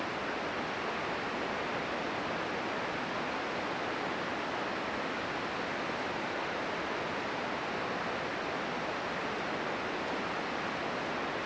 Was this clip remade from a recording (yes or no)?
no